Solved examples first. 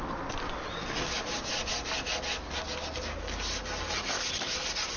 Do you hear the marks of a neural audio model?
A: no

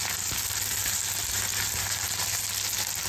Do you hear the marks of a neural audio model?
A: no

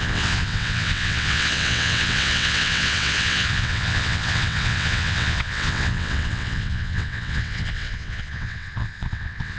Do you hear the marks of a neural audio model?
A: yes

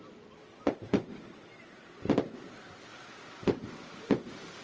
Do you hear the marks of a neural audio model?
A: no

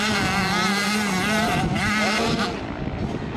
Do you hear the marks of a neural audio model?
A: no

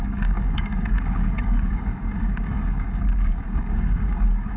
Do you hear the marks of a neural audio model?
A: yes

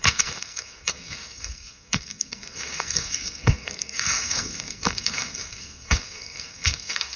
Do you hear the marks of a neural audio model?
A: yes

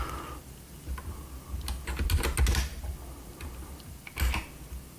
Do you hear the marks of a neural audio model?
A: no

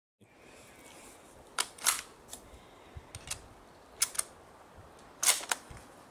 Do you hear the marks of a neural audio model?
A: no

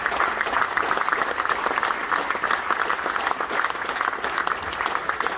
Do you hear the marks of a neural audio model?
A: no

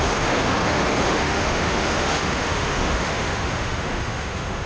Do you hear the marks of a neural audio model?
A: yes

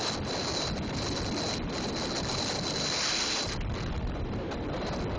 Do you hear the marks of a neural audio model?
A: no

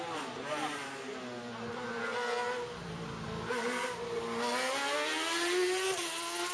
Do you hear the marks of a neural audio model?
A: no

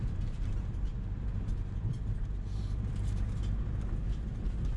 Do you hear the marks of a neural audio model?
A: yes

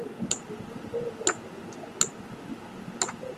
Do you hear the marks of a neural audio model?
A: no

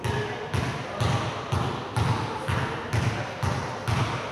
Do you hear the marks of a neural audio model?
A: no